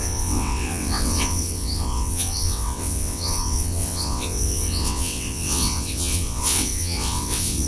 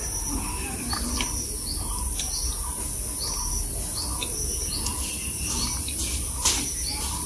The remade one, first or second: first